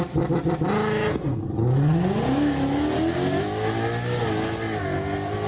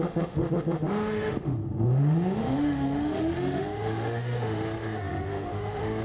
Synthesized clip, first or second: second